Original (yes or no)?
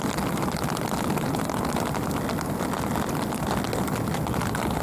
yes